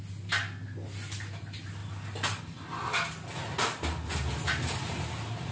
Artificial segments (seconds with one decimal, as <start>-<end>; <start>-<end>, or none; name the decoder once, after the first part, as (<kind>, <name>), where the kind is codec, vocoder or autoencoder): none